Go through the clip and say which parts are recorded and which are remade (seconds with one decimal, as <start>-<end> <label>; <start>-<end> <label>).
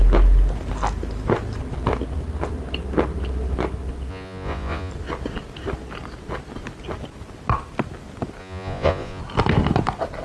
0.0-4.1 recorded; 4.1-4.9 remade; 4.9-8.4 recorded; 8.4-9.2 remade; 9.2-10.2 recorded